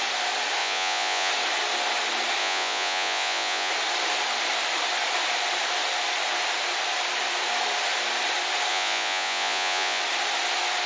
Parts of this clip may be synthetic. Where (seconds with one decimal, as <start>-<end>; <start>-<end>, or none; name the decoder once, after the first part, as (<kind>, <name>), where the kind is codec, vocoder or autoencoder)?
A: 0.6-1.3 (vocoder, Vocos); 2.4-3.7; 8.7-10.0